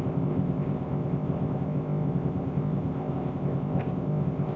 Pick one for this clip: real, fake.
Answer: fake